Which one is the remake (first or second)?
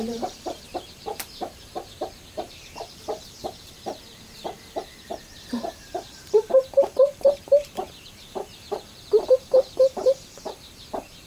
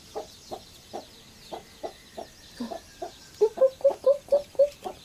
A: first